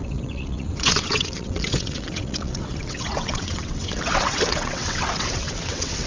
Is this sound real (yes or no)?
no